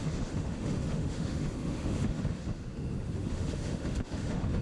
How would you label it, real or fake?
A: fake